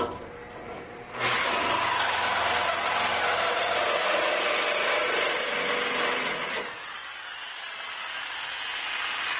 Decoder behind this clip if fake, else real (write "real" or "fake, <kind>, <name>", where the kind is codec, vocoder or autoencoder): real